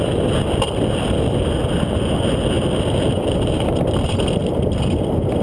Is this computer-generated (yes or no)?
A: no